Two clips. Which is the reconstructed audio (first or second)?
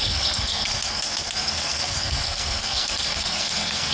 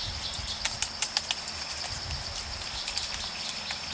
first